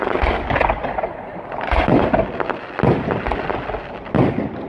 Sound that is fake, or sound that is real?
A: real